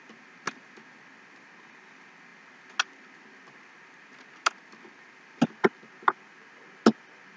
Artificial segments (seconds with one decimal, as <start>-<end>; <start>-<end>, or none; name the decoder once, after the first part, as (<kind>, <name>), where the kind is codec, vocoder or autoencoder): none